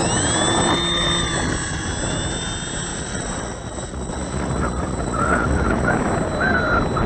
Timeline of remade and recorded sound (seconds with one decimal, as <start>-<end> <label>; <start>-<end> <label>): 0.0-2.9 recorded; 2.9-5.9 remade; 5.9-7.1 recorded